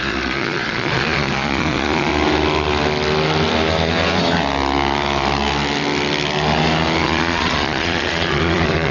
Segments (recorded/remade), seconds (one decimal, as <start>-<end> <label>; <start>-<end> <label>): 0.0-2.1 remade; 2.1-7.0 recorded; 7.0-8.9 remade

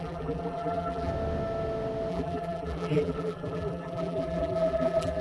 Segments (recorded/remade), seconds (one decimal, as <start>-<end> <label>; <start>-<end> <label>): 0.0-1.1 remade; 1.1-2.1 recorded; 2.1-5.2 remade

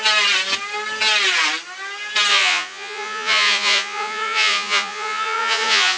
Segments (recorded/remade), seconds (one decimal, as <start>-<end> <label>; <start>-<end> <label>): 0.0-2.3 recorded; 2.3-6.0 remade

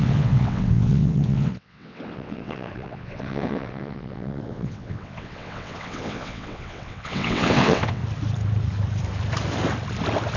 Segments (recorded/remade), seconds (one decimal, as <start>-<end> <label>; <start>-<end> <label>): 0.0-8.0 remade; 8.0-10.4 recorded

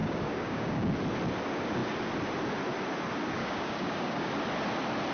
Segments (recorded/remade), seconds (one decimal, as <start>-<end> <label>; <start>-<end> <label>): 0.0-0.9 remade; 0.9-3.4 recorded; 3.4-4.3 remade; 4.3-5.1 recorded

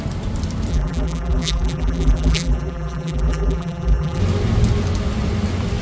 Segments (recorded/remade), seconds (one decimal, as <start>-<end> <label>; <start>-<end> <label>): 0.0-0.7 recorded; 0.7-4.2 remade; 4.2-5.8 recorded

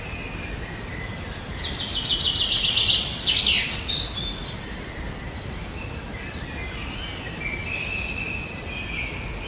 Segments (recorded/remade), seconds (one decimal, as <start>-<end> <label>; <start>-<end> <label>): 0.0-9.5 recorded